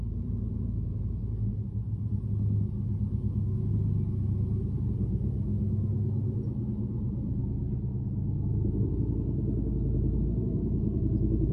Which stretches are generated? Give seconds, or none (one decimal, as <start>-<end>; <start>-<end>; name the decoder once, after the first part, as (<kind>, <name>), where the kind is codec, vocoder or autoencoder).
0.0-1.2 (vocoder, BigVGAN v2); 4.6-5.5; 6.7-7.4; 10.5-11.5